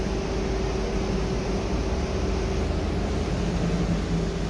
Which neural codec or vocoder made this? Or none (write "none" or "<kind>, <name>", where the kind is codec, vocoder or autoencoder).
none